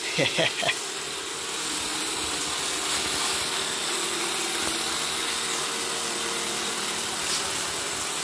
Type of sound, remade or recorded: recorded